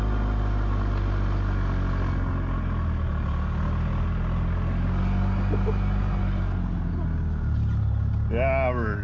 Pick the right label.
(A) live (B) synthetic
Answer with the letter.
A